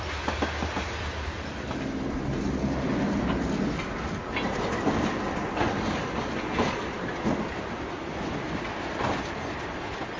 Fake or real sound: real